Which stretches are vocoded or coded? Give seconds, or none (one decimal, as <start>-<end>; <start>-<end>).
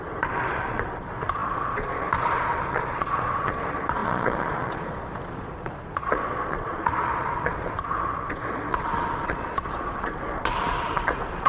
0.0-11.5